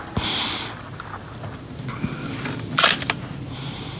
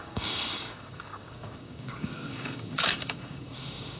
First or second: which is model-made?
second